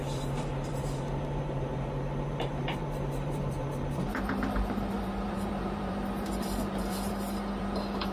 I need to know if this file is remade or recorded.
remade